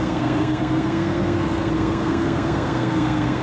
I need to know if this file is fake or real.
fake